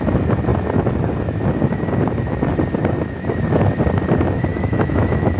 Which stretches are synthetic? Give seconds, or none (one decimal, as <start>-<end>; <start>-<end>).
4.5-5.4